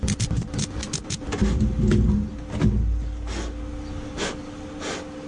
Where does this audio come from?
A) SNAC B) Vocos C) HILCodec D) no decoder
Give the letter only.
D